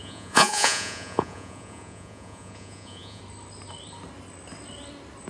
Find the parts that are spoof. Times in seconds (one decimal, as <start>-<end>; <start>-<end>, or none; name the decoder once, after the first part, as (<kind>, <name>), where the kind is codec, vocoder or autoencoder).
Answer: 0.0-3.2 (vocoder, Vocos)